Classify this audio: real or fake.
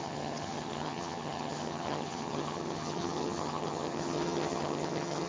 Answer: fake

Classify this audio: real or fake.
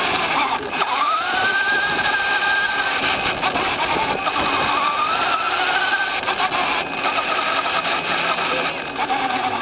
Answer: real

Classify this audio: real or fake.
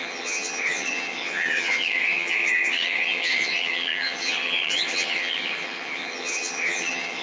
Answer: fake